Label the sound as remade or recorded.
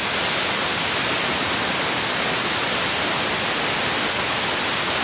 recorded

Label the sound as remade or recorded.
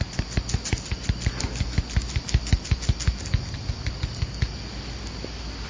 recorded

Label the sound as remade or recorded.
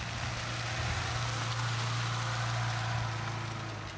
recorded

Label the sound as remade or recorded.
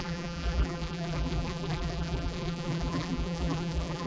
remade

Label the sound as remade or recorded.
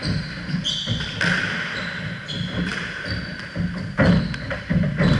recorded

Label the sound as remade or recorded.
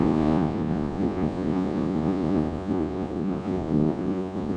remade